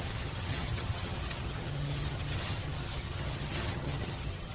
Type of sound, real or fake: fake